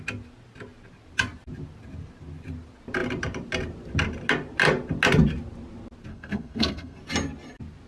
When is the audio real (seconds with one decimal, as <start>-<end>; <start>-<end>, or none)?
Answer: 0.0-6.1; 7.0-7.9